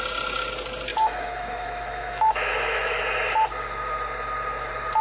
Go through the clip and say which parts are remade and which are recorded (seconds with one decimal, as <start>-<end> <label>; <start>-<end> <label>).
0.0-0.9 recorded; 0.9-3.0 remade; 3.0-5.0 recorded